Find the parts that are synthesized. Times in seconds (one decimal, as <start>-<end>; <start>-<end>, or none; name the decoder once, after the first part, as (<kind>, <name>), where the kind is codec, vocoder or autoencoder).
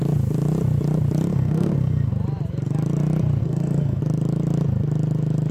1.3-2.1 (codec, SNAC); 3.4-4.0